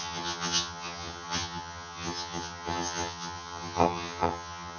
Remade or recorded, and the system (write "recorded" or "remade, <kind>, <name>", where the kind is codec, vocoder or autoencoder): remade, vocoder, HiFi-GAN